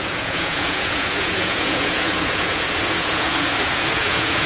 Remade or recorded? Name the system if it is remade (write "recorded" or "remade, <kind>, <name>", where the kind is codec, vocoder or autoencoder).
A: remade, vocoder, Vocos